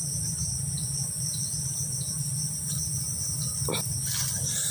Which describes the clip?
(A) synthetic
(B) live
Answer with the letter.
B